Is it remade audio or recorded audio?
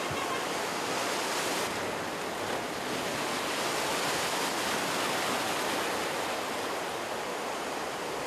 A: recorded